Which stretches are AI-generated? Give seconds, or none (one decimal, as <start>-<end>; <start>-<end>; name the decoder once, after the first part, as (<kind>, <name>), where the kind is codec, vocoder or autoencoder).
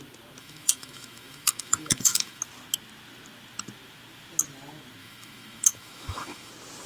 0.4-2.4 (autoencoder, DAC-VAE); 5.0-6.5